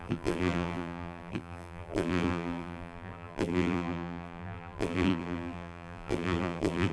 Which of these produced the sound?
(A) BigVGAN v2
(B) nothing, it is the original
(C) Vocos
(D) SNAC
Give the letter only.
A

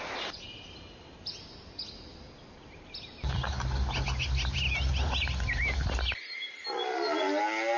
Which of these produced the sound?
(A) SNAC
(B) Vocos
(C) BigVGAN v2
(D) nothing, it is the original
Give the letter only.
D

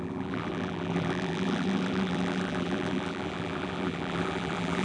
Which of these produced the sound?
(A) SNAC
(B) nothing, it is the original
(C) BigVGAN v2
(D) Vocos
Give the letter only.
C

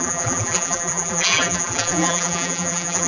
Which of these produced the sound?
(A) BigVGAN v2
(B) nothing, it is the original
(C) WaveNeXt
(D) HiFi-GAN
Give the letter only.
A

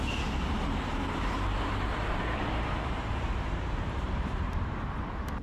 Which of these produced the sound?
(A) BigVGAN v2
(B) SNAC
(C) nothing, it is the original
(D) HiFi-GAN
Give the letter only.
A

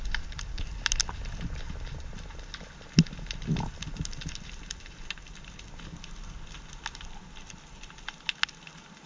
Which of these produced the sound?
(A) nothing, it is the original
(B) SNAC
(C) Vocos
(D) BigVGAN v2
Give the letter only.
A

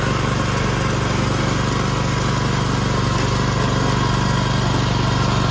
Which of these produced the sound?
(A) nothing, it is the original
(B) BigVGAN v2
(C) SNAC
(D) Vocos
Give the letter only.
A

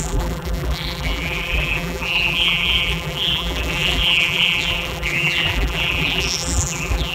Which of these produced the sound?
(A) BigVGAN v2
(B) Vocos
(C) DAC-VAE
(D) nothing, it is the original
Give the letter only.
A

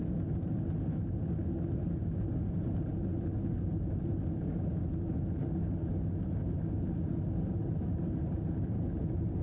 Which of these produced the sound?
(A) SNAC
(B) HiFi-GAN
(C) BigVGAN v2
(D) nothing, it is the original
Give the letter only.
D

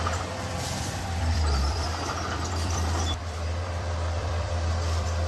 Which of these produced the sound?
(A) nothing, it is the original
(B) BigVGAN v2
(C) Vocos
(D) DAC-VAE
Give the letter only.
B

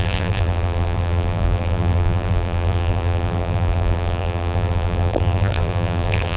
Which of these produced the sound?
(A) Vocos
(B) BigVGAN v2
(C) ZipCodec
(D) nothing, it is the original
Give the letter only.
B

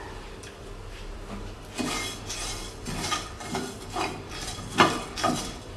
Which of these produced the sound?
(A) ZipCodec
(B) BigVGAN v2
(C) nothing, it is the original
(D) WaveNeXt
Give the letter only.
B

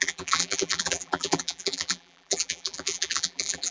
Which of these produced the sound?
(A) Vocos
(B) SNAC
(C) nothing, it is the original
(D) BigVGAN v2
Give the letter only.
D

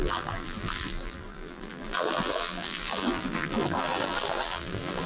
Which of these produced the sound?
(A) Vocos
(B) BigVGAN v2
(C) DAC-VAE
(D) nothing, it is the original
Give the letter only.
B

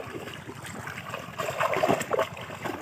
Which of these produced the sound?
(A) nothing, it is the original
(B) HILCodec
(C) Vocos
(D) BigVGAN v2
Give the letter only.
A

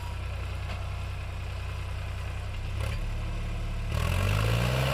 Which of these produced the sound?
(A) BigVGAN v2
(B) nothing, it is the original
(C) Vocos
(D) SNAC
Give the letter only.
B